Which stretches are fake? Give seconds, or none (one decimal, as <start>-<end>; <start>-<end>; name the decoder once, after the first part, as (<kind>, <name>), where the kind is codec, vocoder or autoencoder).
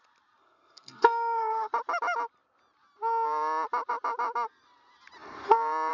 0.4-1.7 (codec, SNAC)